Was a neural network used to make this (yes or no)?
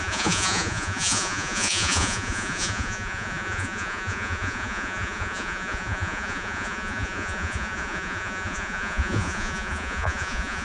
yes